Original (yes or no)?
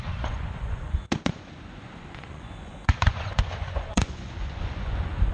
no